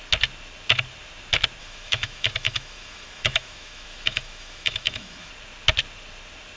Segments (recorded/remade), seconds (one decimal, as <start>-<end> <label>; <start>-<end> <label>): 0.0-1.6 recorded; 1.6-5.3 remade; 5.3-6.6 recorded